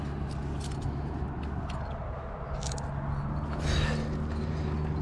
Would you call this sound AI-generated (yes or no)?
no